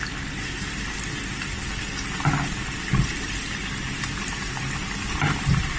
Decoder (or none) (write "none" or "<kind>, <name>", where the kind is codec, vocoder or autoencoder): none